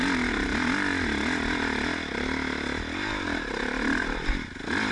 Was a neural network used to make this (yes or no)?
no